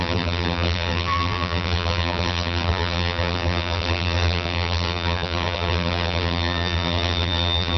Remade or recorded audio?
remade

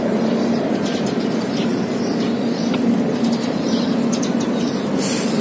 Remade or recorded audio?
recorded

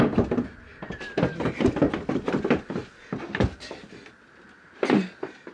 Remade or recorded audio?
recorded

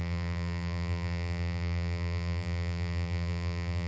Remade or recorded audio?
remade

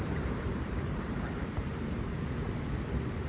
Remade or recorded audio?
remade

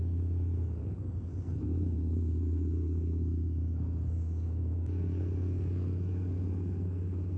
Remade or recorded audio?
remade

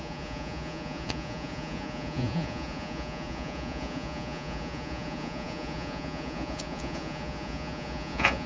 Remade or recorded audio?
remade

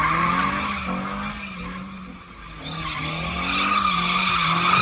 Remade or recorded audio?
recorded